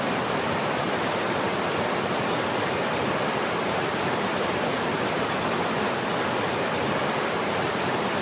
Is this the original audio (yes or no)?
yes